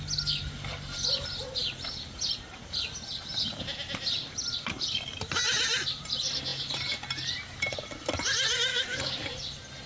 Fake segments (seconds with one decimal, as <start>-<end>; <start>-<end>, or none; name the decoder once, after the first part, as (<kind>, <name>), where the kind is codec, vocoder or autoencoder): 8.7-9.3 (codec, DAC)